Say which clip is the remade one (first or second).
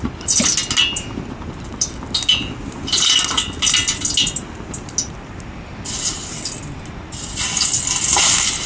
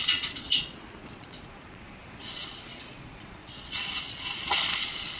second